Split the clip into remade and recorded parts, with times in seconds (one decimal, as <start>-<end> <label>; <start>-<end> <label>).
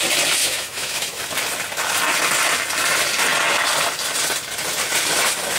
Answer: 0.0-0.4 recorded; 0.4-1.2 remade; 1.2-5.6 recorded